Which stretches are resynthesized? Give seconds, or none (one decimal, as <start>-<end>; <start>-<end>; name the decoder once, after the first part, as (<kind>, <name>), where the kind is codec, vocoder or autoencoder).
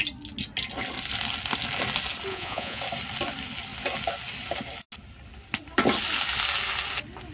2.3-2.8 (vocoder, Vocos)